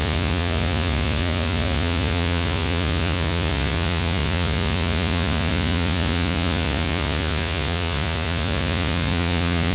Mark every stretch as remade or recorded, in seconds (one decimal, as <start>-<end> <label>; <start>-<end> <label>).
0.0-9.7 remade